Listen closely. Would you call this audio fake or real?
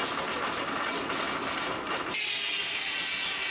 real